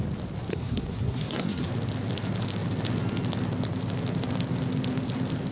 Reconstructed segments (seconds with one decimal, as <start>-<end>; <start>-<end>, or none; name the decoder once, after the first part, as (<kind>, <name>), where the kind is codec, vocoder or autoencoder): 0.5-1.7 (codec, SNAC)